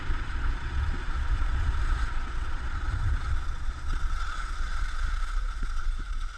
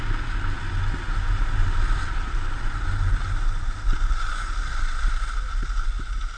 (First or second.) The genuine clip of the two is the second